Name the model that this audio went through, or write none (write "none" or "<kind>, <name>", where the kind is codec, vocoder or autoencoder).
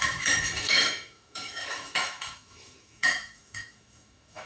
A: autoencoder, DAC-VAE